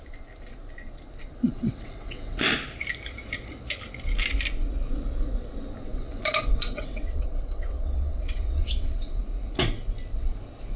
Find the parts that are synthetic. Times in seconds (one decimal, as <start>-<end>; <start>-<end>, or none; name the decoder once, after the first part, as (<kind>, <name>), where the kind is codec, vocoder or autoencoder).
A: 1.4-2.4 (vocoder, WaveNeXt); 5.9-9.2

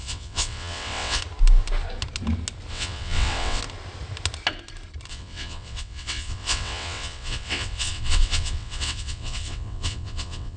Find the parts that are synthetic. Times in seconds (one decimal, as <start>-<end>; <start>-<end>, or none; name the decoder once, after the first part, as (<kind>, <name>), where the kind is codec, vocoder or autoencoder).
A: 0.0-1.2 (vocoder, WaveNeXt); 2.7-3.6; 5.1-10.6

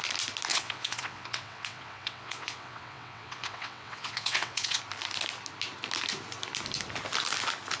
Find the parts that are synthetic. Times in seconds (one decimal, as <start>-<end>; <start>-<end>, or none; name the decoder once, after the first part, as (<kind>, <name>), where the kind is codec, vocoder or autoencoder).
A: 0.5-4.8 (vocoder, WaveNeXt)

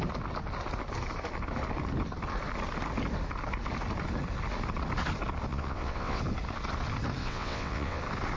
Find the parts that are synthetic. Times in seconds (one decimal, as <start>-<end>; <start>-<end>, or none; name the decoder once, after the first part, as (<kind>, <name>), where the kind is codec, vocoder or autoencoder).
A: 5.5-6.2 (vocoder, WaveNeXt); 7.2-8.0

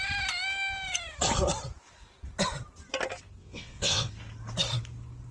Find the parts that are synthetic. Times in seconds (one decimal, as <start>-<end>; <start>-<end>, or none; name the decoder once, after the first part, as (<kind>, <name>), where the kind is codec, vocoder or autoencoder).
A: 3.4-4.1 (vocoder, WaveNeXt)

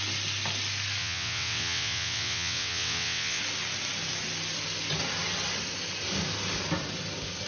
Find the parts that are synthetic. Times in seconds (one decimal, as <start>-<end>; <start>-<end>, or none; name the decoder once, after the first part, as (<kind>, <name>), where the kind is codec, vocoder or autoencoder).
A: 1.0-3.4 (vocoder, WaveNeXt)

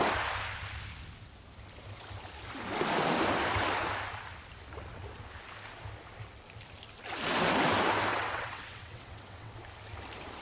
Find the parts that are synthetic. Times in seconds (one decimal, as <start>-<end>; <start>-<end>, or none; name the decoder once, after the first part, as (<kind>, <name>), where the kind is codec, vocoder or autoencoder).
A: 8.1-9.5 (vocoder, WaveNeXt)

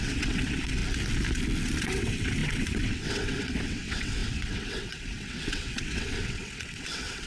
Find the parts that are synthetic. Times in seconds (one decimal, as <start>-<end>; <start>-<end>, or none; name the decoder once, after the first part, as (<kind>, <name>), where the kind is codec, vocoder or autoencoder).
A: 0.0-0.8 (vocoder, WaveNeXt); 1.8-7.3